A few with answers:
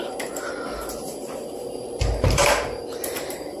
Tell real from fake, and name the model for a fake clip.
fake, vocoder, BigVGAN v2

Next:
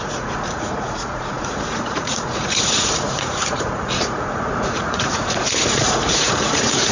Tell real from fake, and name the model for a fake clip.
fake, vocoder, Vocos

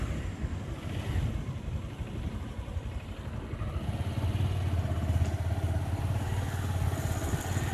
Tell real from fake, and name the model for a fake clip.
real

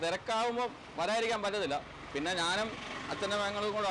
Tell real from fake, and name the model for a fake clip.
real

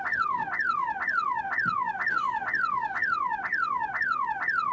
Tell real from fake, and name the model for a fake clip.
real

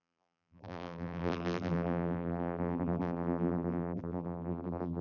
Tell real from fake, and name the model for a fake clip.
fake, vocoder, BigVGAN v2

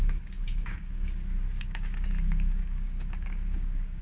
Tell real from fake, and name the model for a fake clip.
fake, codec, DAC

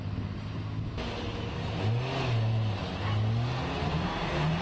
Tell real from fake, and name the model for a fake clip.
real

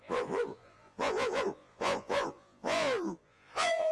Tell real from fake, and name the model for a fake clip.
fake, vocoder, Vocos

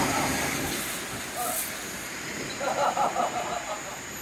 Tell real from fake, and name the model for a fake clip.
real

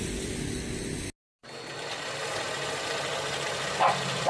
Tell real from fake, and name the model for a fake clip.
real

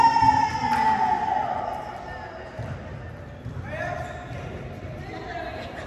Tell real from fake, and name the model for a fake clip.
real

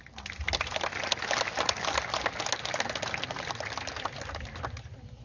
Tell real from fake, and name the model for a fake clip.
real